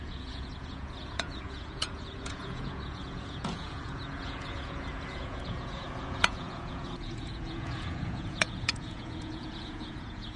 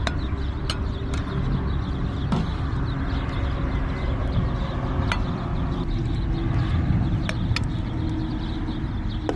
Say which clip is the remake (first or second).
first